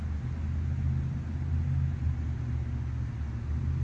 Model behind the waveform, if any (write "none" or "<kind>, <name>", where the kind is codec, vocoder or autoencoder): none